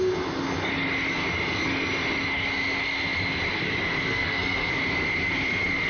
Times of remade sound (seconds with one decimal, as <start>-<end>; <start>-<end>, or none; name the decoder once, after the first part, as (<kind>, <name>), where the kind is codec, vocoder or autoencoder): 4.1-4.7 (codec, SNAC)